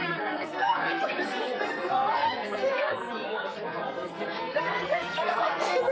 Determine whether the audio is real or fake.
fake